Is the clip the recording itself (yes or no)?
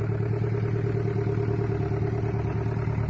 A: yes